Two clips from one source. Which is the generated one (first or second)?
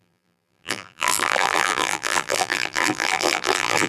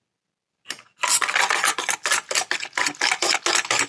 first